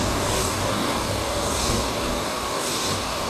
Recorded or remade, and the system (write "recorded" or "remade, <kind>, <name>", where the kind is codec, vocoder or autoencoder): remade, codec, DAC